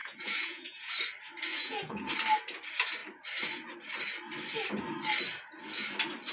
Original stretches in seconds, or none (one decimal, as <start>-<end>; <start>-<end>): 0.9-1.5; 2.1-6.3